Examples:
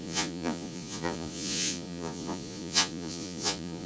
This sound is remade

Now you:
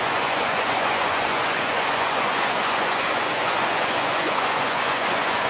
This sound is remade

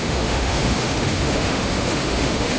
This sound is remade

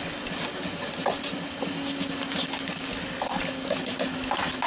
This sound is recorded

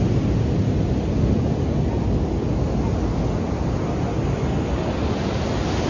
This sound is recorded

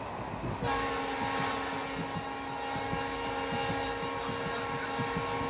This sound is recorded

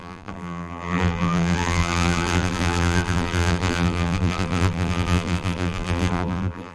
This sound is remade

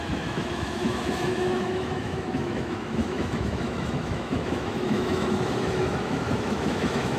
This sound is remade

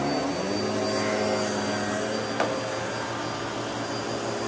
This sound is recorded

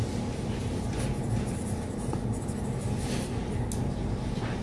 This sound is recorded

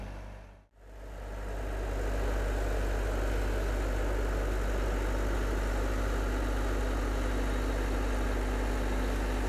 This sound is recorded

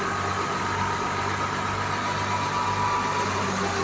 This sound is recorded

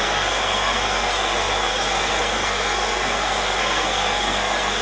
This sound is remade